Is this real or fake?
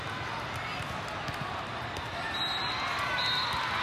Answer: real